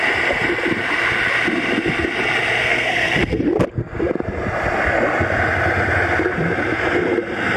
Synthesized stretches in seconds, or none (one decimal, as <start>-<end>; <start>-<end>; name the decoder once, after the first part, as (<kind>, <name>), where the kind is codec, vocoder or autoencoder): 2.6-3.4 (codec, SNAC)